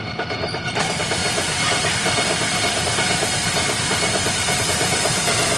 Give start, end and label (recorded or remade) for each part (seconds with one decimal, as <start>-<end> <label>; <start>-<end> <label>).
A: 0.0-5.6 recorded